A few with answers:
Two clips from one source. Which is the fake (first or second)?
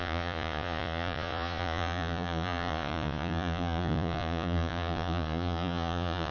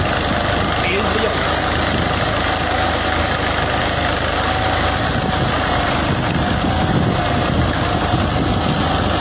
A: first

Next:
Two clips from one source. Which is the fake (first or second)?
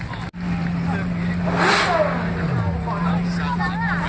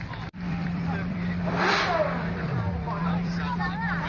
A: second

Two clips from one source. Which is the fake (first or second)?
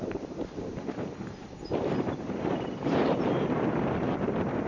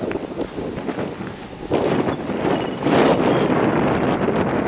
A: first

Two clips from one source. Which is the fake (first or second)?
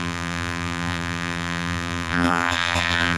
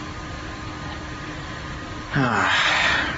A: first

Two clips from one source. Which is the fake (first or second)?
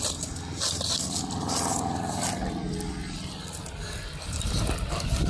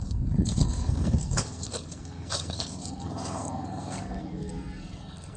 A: second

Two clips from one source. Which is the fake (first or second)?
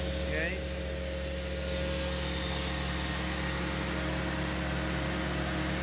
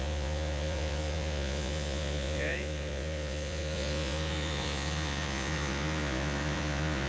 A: second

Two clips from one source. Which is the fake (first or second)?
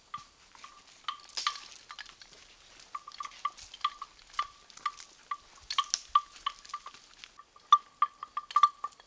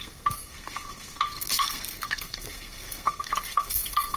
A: second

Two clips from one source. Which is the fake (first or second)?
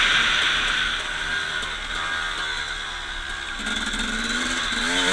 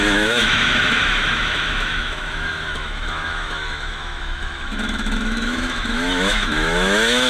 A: second